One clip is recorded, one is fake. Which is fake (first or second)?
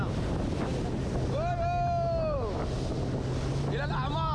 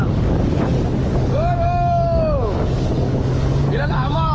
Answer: second